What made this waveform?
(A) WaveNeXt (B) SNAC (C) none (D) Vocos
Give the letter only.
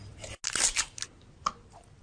C